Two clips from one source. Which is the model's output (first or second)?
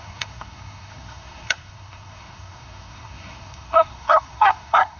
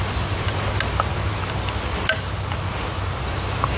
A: first